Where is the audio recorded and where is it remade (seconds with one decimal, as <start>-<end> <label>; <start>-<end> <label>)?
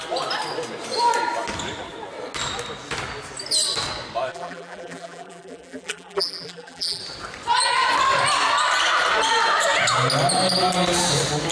0.0-4.3 recorded; 4.3-7.0 remade; 7.0-11.5 recorded